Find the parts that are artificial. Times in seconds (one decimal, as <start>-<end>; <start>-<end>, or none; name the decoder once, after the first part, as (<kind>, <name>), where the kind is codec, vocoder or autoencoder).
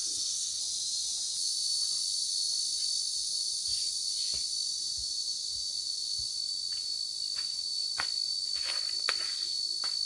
0.0-0.6 (codec, SNAC)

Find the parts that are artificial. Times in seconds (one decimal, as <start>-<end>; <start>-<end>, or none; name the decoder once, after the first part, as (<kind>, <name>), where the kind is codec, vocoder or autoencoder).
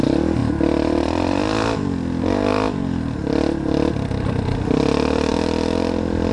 none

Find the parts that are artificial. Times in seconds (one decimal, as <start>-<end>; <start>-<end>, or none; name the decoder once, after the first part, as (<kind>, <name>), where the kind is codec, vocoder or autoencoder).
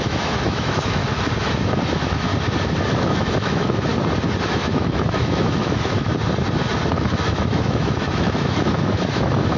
0.0-1.0 (autoencoder, DAC-VAE); 1.9-2.3; 3.0-3.9; 4.5-6.1; 6.9-9.6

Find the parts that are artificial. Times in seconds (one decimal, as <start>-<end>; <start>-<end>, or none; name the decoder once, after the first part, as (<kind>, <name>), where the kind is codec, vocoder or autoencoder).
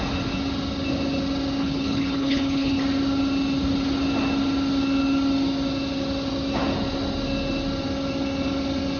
1.6-2.8 (codec, HILCodec)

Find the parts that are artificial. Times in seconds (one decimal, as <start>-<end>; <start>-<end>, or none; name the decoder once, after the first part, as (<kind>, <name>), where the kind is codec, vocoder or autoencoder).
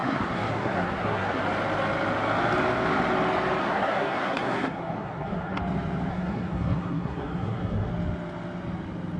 0.0-1.4 (codec, SNAC); 3.6-5.6; 6.1-7.9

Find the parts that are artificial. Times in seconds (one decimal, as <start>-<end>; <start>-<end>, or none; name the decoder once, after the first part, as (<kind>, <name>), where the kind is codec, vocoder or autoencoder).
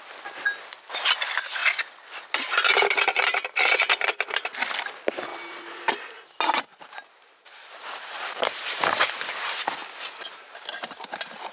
5.3-5.9 (vocoder, BigVGAN v2); 6.7-9.3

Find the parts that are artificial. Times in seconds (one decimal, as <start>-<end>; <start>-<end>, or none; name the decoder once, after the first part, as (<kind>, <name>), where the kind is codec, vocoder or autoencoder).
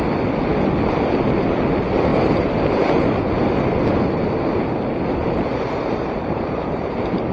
2.1-3.1 (vocoder, BigVGAN v2); 5.2-6.8